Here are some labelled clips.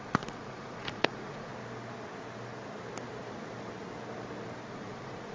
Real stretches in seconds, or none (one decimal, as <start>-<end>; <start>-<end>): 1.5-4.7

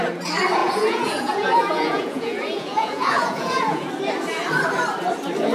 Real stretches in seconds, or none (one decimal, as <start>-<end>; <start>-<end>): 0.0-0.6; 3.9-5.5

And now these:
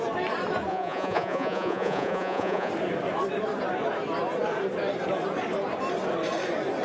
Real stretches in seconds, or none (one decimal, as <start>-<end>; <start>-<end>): 0.0-0.7; 2.7-6.8

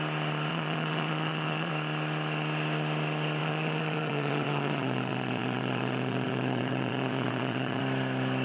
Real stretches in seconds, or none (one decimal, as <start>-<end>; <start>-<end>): 0.0-0.5; 1.7-3.4; 7.8-8.4

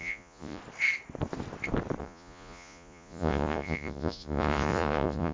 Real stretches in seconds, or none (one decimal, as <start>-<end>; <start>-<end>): 0.6-2.0